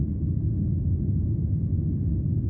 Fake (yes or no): no